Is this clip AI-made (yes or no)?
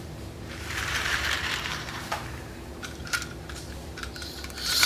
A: yes